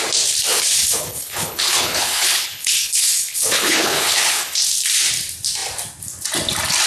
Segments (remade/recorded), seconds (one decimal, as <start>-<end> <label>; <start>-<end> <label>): 0.0-0.5 recorded; 0.5-4.6 remade; 4.6-6.9 recorded